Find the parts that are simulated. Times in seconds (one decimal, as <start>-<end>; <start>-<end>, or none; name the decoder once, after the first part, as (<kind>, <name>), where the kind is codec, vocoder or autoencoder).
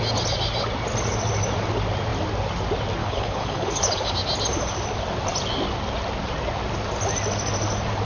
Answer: 3.0-4.1 (codec, HILCodec)